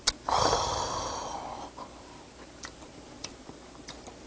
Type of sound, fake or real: real